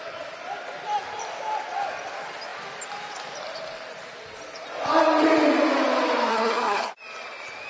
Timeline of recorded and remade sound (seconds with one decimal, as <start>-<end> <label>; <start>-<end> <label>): 0.0-6.3 recorded; 6.3-6.9 remade; 6.9-7.7 recorded